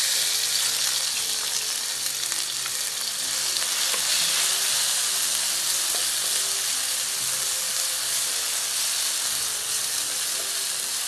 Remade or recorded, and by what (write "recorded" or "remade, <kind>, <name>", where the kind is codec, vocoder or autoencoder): recorded